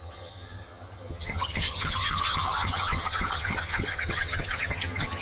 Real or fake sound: fake